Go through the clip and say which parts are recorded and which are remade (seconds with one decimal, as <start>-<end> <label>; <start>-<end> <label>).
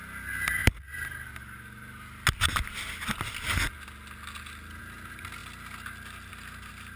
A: 0.0-7.0 recorded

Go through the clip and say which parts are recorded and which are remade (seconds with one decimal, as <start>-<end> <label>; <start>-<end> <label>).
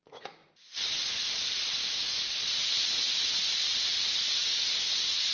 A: 0.0-0.4 remade; 0.4-1.0 recorded; 1.0-5.3 remade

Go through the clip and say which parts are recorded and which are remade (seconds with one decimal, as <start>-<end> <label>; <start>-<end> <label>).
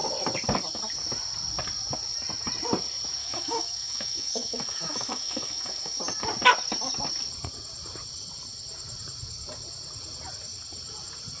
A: 0.0-3.2 recorded; 3.2-6.0 remade; 6.0-11.4 recorded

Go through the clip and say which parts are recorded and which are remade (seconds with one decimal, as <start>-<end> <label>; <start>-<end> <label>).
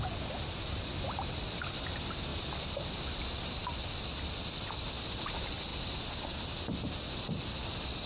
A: 0.0-2.3 recorded; 2.3-3.2 remade; 3.2-8.1 recorded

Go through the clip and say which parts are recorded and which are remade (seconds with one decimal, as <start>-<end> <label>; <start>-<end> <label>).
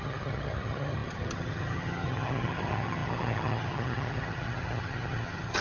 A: 0.0-5.6 remade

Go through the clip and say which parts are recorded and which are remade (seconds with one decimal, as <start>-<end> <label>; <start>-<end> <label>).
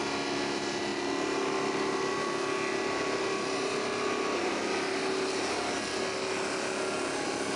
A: 0.0-7.6 recorded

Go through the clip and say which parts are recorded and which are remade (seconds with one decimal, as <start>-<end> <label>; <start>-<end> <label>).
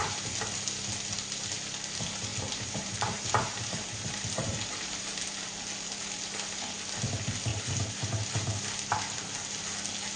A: 0.0-0.5 remade; 0.5-2.3 recorded; 2.3-5.1 remade; 5.1-7.5 recorded; 7.5-8.6 remade; 8.6-10.2 recorded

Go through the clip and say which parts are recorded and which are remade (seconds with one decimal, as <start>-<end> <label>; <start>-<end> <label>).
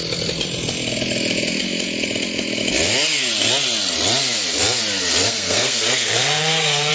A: 0.0-5.2 recorded; 5.2-6.9 remade